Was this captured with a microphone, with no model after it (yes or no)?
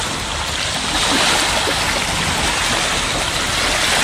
yes